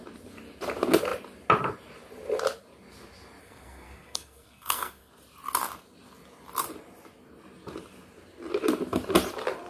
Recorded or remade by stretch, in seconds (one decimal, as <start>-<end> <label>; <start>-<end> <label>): 0.0-3.4 recorded; 3.4-5.1 remade; 5.1-9.7 recorded